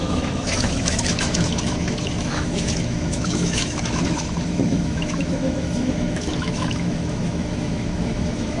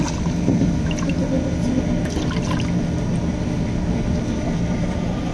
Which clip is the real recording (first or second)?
second